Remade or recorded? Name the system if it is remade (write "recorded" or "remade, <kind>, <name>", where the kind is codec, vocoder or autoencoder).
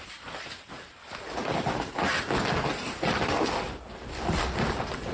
recorded